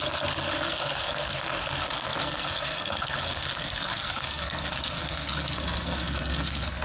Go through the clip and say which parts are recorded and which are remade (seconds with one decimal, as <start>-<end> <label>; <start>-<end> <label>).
0.0-6.8 remade